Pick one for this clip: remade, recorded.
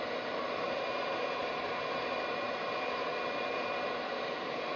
remade